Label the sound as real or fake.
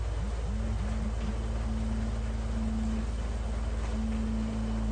real